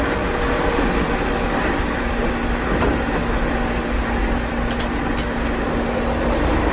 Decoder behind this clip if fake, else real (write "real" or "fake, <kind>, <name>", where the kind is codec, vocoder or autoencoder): real